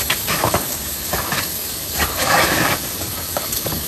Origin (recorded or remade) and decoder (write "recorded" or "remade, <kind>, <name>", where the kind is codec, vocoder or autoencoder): remade, codec, DAC